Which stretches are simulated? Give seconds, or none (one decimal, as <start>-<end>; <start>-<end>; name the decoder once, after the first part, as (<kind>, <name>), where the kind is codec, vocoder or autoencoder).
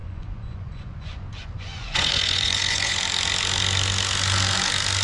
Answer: 0.0-3.0 (vocoder, Vocos)